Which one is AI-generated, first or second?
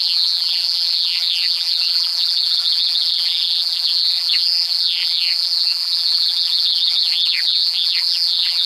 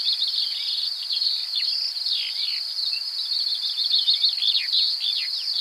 first